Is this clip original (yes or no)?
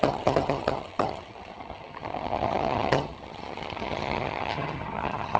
no